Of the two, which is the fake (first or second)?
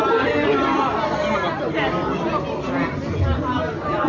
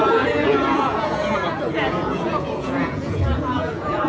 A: second